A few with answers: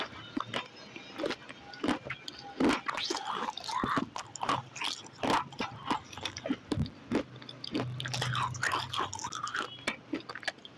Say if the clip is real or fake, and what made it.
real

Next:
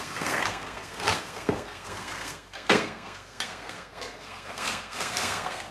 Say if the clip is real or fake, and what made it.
fake, codec, SNAC